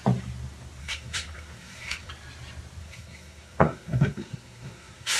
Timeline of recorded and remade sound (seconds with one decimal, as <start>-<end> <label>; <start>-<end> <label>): 0.0-0.8 recorded; 0.8-2.1 remade; 2.1-2.8 recorded; 2.8-5.2 remade